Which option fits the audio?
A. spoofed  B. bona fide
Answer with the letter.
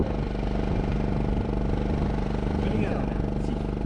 B